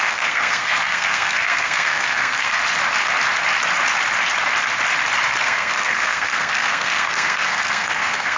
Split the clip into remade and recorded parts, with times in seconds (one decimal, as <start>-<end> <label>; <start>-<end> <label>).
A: 0.0-2.6 remade; 2.6-5.4 recorded; 5.4-8.4 remade